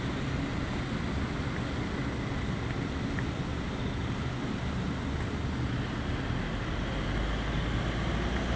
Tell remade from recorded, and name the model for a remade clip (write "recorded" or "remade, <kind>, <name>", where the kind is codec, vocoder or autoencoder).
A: recorded